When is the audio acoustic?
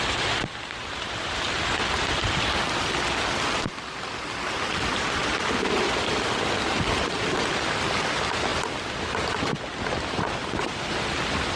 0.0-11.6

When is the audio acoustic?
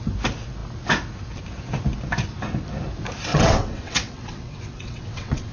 0.0-3.3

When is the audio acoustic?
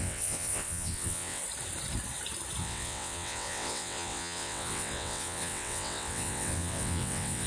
1.4-2.6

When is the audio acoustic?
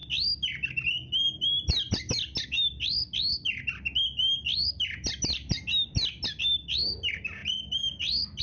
0.0-8.4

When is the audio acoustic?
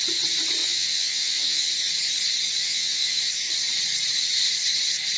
0.0-0.6; 1.7-2.6; 3.2-5.2